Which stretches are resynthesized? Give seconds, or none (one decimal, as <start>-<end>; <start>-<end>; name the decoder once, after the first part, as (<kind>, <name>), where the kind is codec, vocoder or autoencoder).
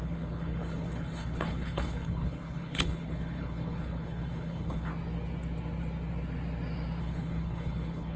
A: 0.0-4.9 (codec, HILCodec); 7.0-8.2